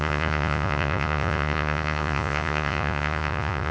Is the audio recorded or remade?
remade